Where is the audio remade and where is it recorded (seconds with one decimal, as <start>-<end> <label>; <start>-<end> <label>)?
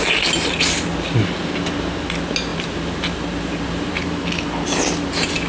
0.0-2.5 recorded; 2.5-3.9 remade; 3.9-5.5 recorded